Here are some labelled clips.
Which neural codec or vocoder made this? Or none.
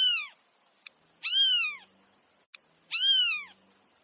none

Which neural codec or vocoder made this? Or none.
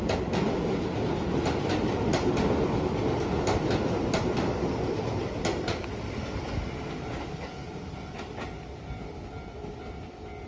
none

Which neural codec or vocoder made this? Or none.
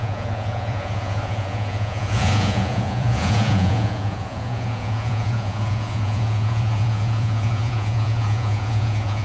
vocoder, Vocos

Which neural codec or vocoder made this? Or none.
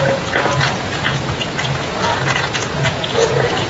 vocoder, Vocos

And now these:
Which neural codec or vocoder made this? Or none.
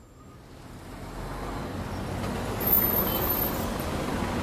none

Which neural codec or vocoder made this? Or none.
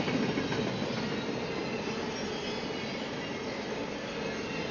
none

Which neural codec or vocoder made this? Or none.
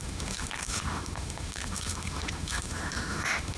autoencoder, DAC-VAE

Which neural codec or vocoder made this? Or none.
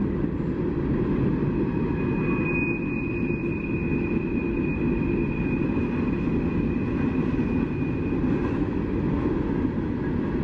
none